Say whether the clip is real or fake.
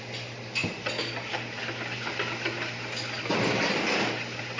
real